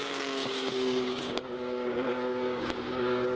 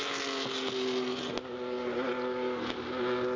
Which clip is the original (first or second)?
second